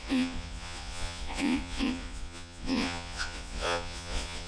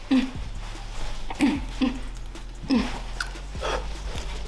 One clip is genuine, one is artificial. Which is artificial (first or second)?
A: first